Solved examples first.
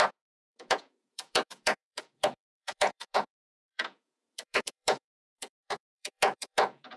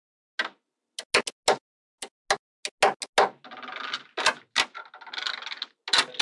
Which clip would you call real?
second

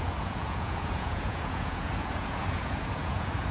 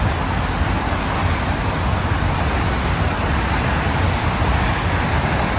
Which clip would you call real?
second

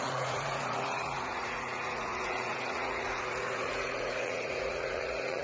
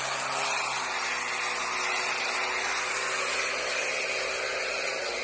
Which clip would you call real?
second